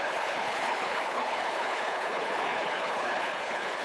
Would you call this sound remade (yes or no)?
yes